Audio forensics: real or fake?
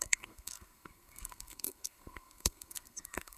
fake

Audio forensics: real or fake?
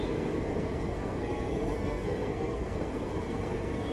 fake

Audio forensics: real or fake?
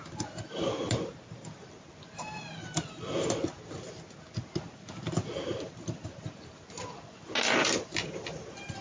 real